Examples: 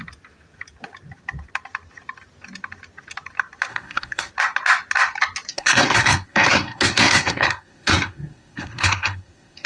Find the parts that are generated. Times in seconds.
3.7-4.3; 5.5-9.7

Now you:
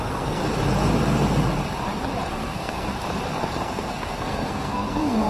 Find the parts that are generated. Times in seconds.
0.0-0.4; 2.3-2.9; 3.6-5.3

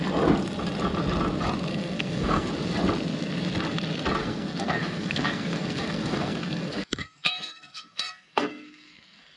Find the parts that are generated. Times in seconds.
1.7-2.5; 4.2-9.4

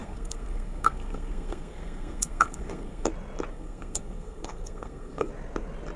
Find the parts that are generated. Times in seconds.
0.0-3.1; 3.5-5.3

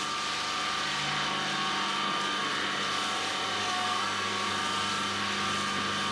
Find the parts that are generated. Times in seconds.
3.6-4.5

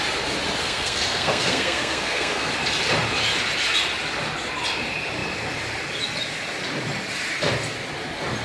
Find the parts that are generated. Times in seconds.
0.6-2.5